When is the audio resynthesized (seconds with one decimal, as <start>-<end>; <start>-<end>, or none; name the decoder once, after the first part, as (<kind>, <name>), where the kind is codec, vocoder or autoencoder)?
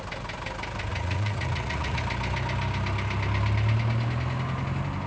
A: 0.9-2.0 (vocoder, Vocos)